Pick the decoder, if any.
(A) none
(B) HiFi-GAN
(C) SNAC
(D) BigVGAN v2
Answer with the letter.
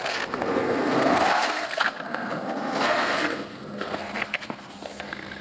C